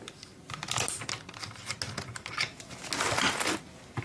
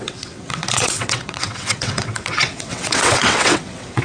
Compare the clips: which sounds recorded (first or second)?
first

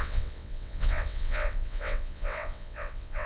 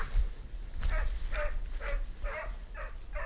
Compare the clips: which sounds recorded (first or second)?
second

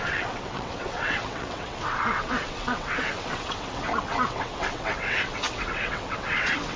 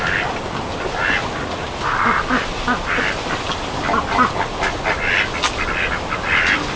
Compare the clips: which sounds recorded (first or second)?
second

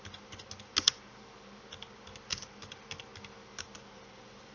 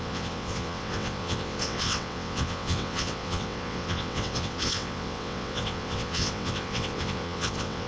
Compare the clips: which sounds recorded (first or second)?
first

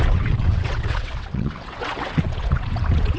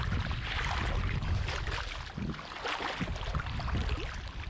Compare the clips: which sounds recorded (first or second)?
second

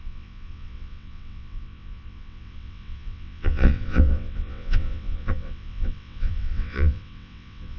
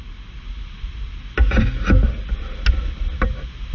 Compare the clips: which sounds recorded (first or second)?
second